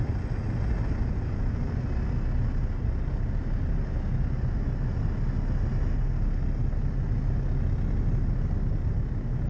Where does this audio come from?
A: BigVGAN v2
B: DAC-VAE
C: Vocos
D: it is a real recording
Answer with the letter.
D